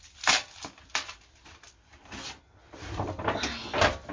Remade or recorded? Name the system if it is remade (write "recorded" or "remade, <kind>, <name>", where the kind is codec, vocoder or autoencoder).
recorded